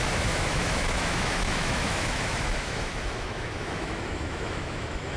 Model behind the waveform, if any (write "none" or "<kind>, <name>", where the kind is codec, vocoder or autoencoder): autoencoder, DAC-VAE